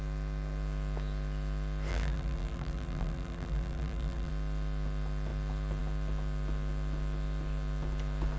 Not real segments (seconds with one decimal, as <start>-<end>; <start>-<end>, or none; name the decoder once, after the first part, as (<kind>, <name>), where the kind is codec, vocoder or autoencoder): 1.9-4.3 (vocoder, BigVGAN v2)